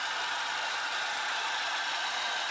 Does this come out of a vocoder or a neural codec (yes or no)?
no